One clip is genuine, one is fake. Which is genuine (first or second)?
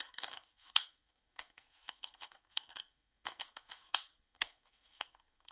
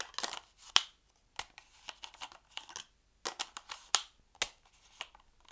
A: second